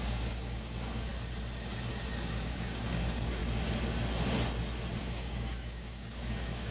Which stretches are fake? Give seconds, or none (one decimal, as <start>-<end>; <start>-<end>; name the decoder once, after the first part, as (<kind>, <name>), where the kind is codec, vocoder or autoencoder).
0.0-1.1 (codec, DAC); 1.9-3.4; 5.0-6.7